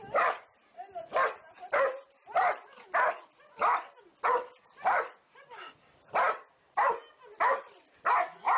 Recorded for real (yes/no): yes